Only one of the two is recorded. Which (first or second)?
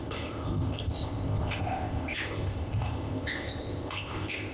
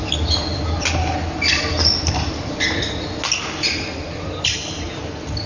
second